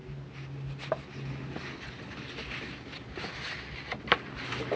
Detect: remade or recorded recorded